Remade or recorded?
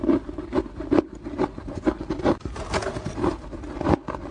recorded